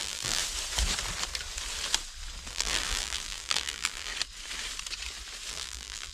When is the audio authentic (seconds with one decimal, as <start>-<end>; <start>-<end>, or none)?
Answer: 0.4-2.5; 4.1-5.5